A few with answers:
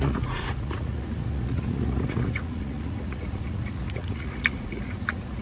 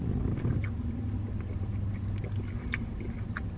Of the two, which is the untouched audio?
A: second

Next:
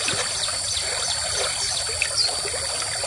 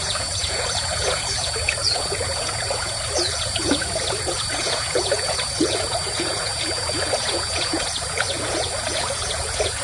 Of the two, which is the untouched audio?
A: first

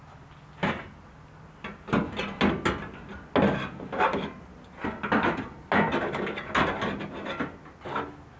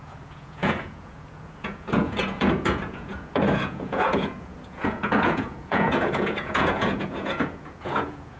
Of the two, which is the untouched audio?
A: first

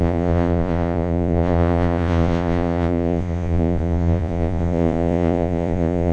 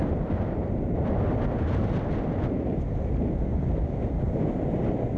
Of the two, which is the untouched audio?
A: second